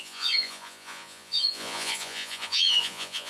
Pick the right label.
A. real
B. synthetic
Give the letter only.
B